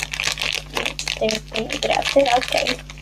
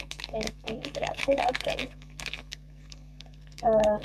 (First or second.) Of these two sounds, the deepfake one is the second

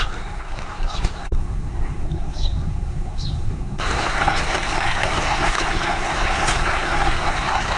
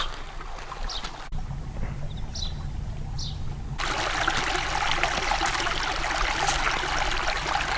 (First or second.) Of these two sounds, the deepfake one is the first